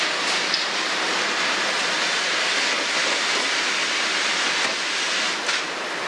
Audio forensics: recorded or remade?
recorded